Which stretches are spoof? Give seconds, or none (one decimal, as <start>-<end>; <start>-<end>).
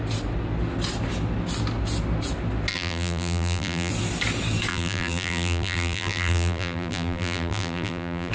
2.7-3.9; 4.7-8.3